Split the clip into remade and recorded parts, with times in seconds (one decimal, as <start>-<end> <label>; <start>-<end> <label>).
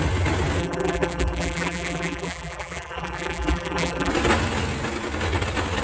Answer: 0.0-0.6 recorded; 0.6-4.1 remade; 4.1-5.8 recorded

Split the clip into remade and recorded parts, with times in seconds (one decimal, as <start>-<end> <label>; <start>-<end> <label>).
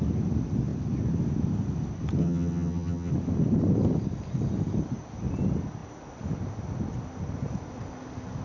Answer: 0.0-2.2 recorded; 2.2-3.1 remade; 3.1-8.4 recorded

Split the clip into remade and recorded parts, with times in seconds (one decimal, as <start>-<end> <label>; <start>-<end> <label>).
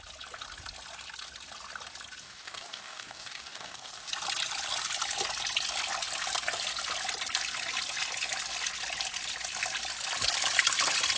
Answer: 0.0-2.2 recorded; 2.2-4.1 remade; 4.1-11.2 recorded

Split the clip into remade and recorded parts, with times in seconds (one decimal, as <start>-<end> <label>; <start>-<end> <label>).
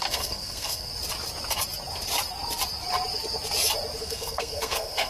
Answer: 0.0-0.9 remade; 0.9-4.0 recorded; 4.0-5.1 remade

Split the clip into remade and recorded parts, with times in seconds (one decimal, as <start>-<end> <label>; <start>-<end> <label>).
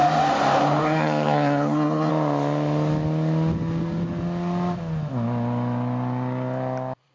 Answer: 0.0-0.8 recorded; 0.8-2.1 remade; 2.1-7.1 recorded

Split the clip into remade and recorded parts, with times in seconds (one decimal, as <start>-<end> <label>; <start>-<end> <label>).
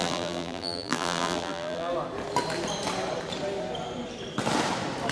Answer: 0.0-1.9 remade; 1.9-5.1 recorded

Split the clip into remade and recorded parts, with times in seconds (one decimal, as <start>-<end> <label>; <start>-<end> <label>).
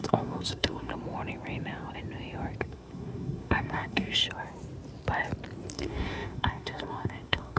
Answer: 0.0-0.9 remade; 0.9-2.6 recorded; 2.6-4.2 remade; 4.2-5.7 recorded; 5.7-7.6 remade